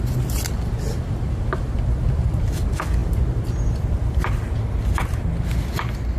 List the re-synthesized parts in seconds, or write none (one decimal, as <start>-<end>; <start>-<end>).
none